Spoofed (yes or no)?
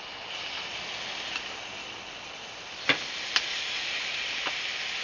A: no